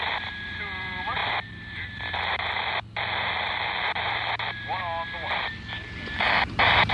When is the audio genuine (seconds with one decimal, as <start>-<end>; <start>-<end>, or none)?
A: 0.0-6.9